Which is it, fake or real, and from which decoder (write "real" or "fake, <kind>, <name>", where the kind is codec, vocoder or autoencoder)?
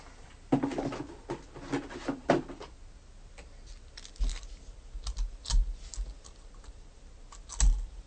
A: real